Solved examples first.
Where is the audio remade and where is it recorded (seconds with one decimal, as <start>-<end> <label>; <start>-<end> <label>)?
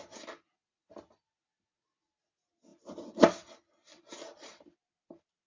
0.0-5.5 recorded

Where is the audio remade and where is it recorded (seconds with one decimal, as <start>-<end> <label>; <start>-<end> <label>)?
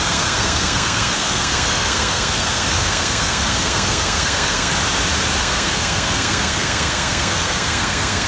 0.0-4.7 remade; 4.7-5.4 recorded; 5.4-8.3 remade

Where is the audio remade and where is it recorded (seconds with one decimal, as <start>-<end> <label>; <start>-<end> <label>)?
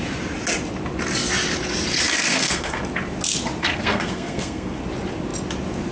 0.0-2.1 recorded; 2.1-2.8 remade; 2.8-3.6 recorded; 3.6-4.8 remade; 4.8-5.9 recorded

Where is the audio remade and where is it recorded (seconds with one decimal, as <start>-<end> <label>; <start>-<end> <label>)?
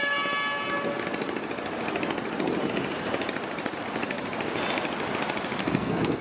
0.0-5.6 recorded; 5.6-6.2 remade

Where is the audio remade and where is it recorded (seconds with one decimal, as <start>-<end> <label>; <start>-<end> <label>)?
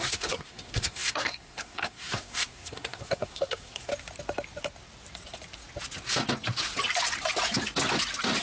0.0-3.9 remade; 3.9-8.4 recorded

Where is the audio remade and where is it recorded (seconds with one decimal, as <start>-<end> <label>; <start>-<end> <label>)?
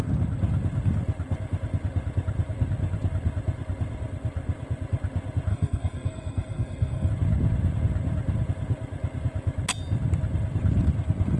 0.0-5.5 recorded; 5.5-7.1 remade; 7.1-11.4 recorded